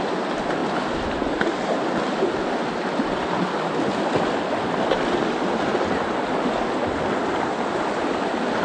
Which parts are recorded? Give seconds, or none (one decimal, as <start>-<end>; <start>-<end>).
0.0-8.6